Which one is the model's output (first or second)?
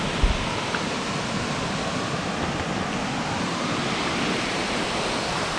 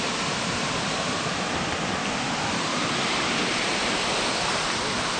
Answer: second